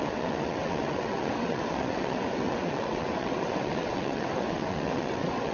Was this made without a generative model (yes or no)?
no